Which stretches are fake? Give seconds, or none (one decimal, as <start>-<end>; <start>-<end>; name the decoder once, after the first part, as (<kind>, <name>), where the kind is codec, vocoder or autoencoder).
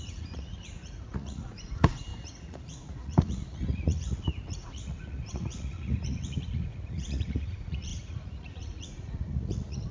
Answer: 0.0-9.9 (vocoder, Vocos)